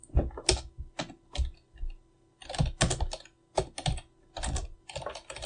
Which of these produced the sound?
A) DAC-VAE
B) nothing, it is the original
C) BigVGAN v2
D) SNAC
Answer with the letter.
B